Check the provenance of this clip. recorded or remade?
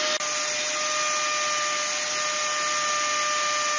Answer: recorded